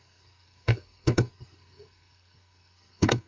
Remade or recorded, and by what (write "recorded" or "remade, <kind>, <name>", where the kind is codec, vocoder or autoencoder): remade, codec, SNAC